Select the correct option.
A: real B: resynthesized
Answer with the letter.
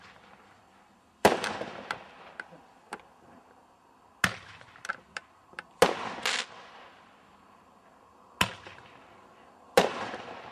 A